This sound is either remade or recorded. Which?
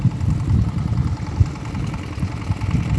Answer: recorded